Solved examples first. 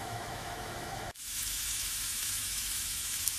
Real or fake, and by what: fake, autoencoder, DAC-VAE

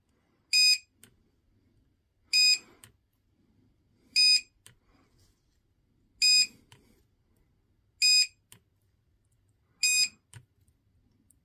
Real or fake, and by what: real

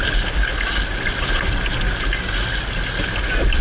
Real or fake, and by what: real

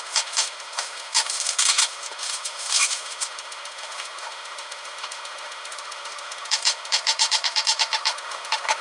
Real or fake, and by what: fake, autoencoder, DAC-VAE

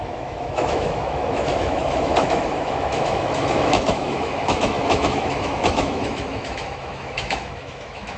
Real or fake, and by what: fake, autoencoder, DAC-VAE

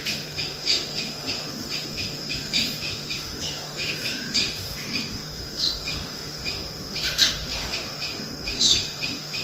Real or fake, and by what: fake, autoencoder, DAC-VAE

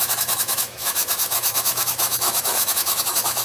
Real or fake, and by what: fake, autoencoder, DAC-VAE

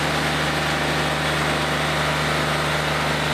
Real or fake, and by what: real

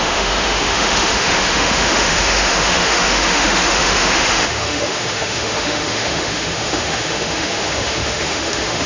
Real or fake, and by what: fake, autoencoder, DAC-VAE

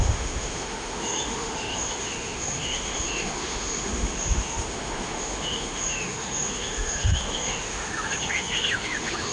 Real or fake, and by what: fake, autoencoder, DAC-VAE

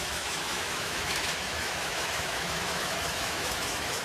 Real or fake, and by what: fake, autoencoder, DAC-VAE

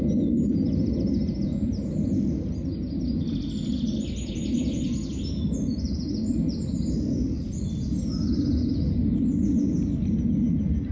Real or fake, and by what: real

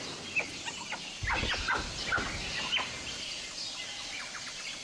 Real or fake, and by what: real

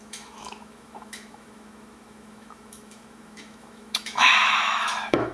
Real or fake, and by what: fake, autoencoder, DAC-VAE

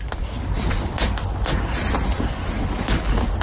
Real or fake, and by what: real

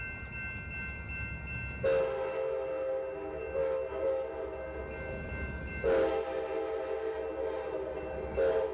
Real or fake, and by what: real